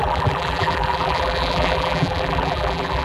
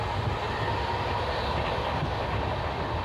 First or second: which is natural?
second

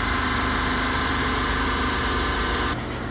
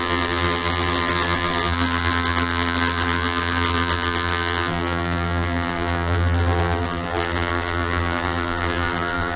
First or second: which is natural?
first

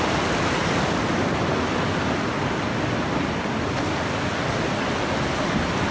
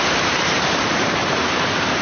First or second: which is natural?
first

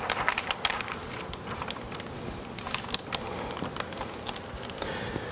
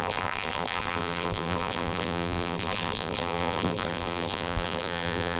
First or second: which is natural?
first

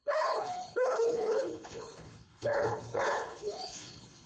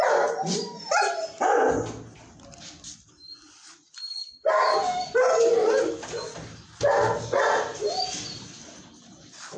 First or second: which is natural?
second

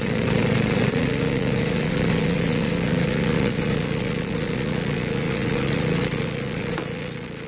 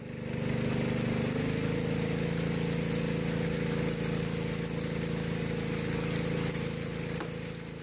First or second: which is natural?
second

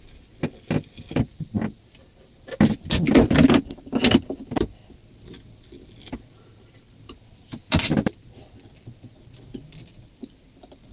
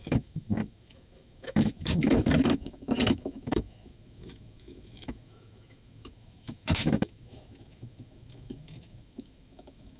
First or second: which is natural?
first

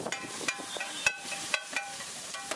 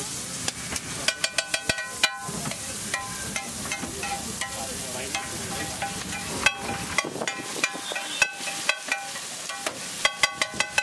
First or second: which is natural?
second